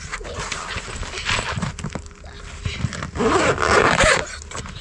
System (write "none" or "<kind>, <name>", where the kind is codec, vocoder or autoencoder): none